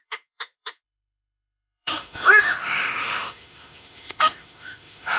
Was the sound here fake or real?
fake